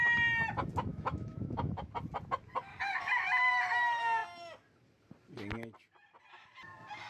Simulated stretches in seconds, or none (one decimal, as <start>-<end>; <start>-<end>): 0.9-1.9